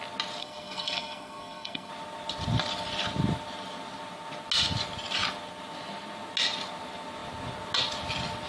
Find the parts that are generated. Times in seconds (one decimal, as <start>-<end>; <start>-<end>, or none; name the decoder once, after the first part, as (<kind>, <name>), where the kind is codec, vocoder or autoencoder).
0.4-1.9 (codec, SNAC)